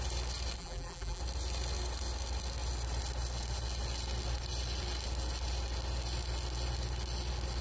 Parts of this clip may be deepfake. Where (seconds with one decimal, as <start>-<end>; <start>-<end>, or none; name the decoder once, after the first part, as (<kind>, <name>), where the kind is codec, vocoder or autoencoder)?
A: 0.6-1.2 (vocoder, BigVGAN v2)